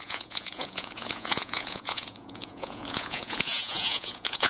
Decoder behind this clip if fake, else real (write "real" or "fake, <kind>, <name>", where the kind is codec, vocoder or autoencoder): fake, vocoder, Vocos